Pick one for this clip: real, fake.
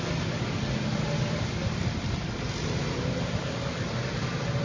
real